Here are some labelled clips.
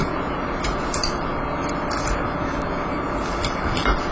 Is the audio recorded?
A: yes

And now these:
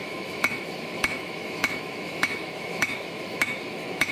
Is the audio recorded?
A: no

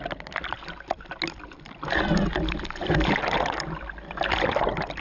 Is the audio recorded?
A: yes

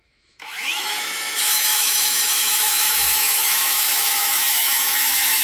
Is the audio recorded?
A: no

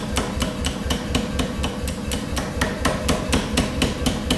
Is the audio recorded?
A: yes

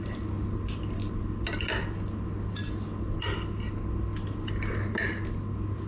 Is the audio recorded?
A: yes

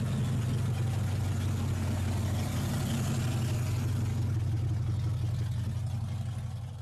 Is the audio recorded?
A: yes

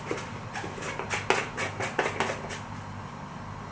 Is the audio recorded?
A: yes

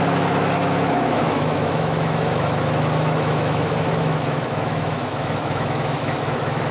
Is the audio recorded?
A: no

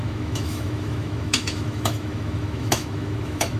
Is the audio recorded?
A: no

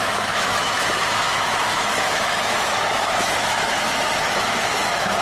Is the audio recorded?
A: no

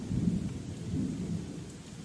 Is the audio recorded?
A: yes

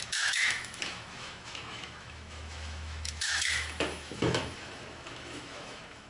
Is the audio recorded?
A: no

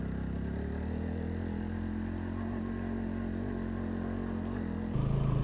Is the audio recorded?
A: yes